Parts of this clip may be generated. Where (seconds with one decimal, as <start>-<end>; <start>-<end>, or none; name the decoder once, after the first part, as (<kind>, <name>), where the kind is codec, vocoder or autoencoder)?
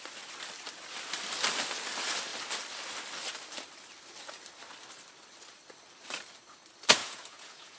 7.0-7.8 (vocoder, Vocos)